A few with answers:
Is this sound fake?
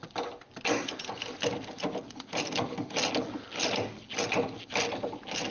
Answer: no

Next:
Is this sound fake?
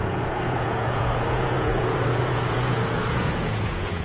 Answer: yes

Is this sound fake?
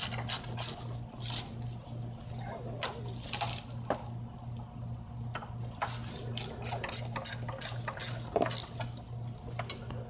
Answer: no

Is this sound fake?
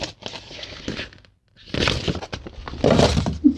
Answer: no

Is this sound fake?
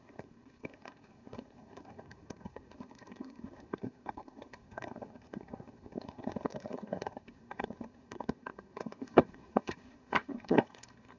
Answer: yes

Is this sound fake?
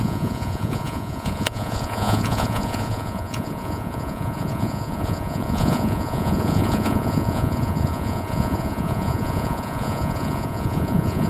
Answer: yes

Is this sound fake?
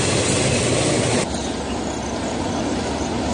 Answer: no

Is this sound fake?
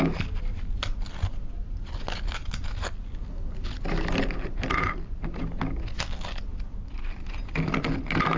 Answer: no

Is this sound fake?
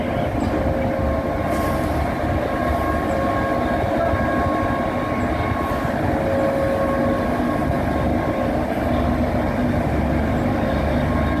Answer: no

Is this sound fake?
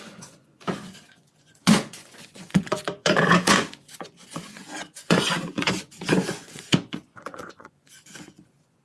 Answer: yes